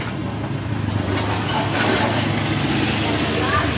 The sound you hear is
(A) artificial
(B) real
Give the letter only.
B